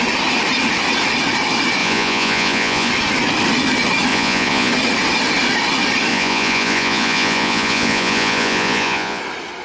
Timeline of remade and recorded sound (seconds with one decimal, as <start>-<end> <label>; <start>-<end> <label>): 0.0-1.8 recorded; 1.8-2.9 remade; 2.9-4.1 recorded; 4.1-4.7 remade; 4.7-6.1 recorded; 6.1-9.2 remade; 9.2-9.6 recorded